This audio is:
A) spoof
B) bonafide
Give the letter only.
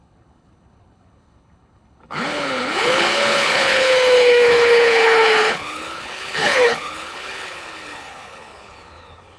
A